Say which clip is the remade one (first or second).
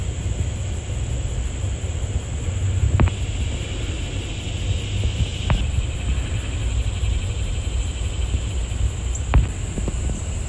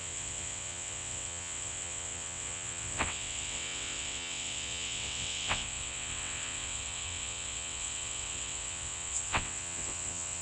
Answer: second